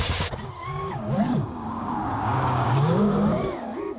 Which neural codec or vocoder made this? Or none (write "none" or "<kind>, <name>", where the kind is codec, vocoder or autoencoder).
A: codec, DAC